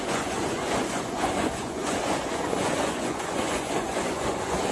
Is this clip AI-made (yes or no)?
yes